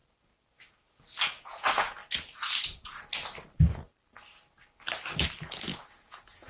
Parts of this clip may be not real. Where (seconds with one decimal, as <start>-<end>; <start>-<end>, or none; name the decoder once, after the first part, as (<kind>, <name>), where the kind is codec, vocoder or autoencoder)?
1.4-2.0 (vocoder, Vocos); 5.9-6.5